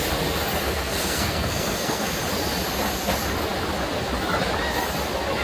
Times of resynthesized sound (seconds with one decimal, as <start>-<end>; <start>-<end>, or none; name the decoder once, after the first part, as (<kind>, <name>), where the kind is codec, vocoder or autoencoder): 0.5-2.2 (codec, SNAC)